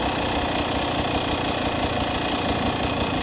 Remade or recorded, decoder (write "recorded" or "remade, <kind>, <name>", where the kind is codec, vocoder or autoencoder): recorded